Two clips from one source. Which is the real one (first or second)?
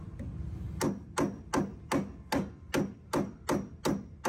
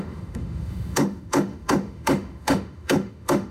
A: first